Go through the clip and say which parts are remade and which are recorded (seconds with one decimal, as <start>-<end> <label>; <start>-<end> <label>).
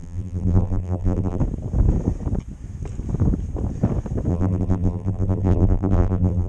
0.0-1.4 remade; 1.4-4.3 recorded; 4.3-6.5 remade